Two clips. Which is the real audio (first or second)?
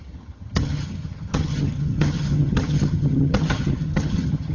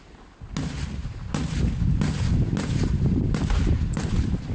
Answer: second